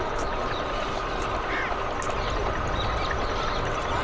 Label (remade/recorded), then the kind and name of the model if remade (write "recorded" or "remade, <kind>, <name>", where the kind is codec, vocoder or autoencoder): recorded